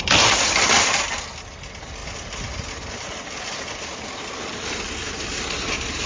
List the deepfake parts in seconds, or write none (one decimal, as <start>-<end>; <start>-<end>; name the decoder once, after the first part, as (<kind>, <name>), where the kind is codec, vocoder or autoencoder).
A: none